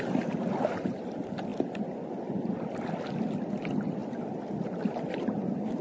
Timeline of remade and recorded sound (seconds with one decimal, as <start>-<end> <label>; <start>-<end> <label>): 0.0-1.5 recorded; 1.5-3.1 remade; 3.1-5.8 recorded